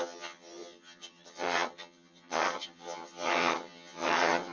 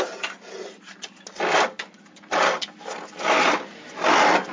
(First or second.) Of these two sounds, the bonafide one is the second